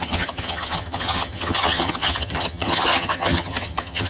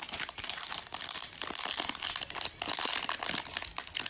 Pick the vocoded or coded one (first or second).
first